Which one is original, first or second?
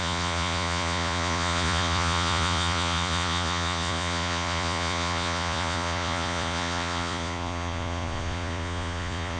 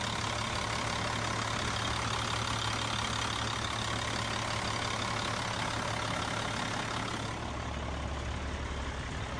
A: second